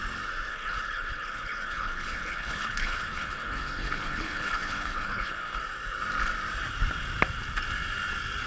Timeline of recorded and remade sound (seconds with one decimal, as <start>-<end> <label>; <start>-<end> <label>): 0.0-0.5 recorded; 0.5-5.6 remade; 5.6-8.5 recorded